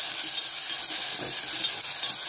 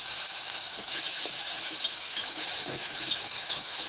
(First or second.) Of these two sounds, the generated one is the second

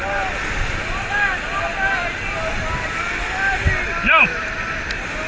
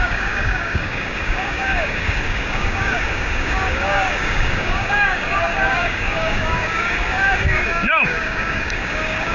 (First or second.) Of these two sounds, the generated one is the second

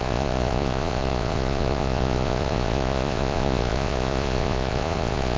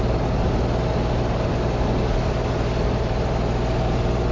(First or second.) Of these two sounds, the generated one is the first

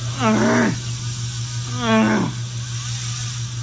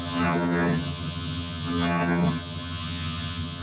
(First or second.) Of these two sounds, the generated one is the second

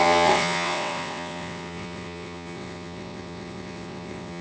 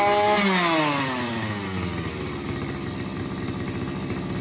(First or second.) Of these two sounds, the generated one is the first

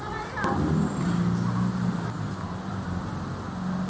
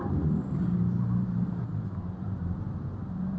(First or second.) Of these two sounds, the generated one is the second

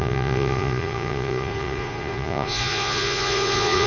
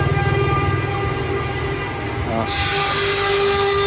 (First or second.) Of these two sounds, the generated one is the first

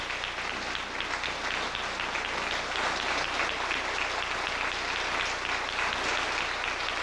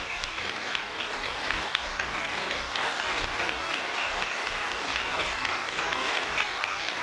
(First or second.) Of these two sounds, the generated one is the second